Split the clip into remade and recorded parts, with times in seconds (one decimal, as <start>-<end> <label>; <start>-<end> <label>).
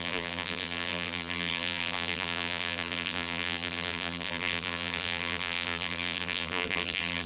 0.0-7.3 remade